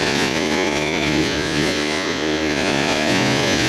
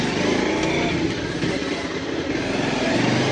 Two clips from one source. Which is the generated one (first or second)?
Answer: first